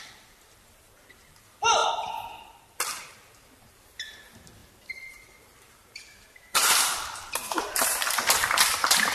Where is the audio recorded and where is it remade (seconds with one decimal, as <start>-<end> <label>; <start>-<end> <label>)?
0.0-1.8 remade; 1.8-3.0 recorded; 3.0-9.1 remade